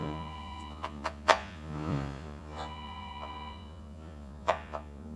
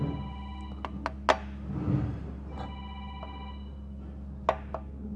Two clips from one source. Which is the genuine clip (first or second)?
second